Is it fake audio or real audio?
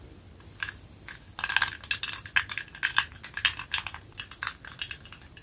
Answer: real